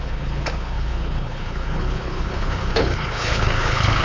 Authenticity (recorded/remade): remade